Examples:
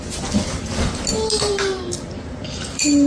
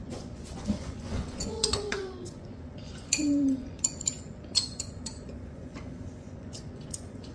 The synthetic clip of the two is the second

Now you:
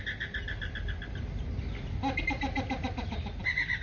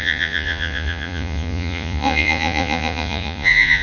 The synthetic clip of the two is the second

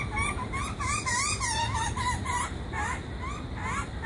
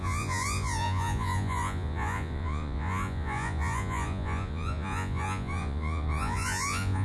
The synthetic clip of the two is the second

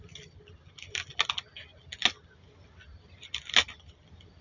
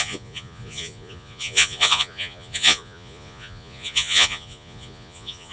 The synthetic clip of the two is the second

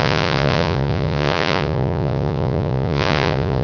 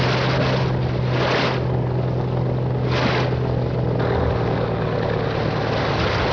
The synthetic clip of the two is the first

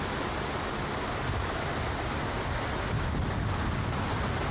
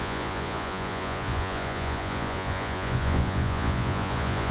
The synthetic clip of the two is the second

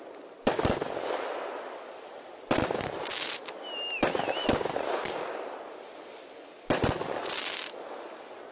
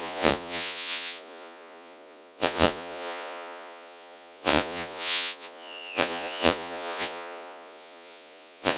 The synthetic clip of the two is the second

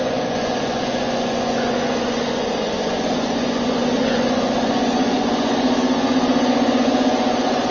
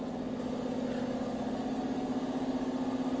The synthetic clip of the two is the first